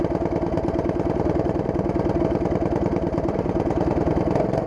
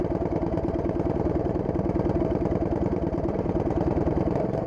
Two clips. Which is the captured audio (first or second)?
first